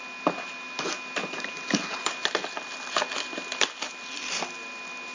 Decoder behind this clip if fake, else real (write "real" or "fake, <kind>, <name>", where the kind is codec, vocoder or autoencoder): real